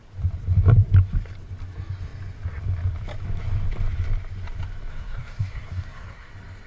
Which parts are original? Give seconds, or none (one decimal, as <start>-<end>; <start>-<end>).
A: 0.0-4.9; 6.3-6.7